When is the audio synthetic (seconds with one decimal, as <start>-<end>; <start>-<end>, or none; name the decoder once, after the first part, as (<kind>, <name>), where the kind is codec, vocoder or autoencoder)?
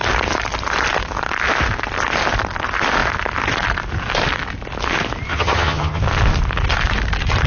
5.3-6.0 (vocoder, HiFi-GAN)